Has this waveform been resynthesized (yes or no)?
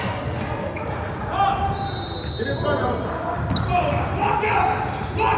no